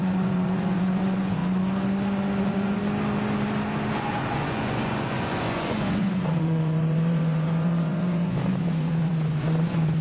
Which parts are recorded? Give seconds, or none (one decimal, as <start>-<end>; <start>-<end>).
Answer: 1.4-2.4; 2.8-3.9

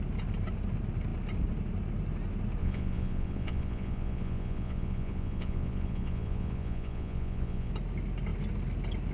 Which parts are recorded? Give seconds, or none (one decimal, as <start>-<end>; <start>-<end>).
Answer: 0.0-2.6; 7.7-9.1

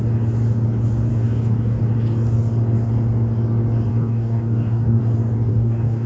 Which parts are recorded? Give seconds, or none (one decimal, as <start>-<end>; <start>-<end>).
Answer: 0.0-1.1; 1.8-3.9; 5.0-5.5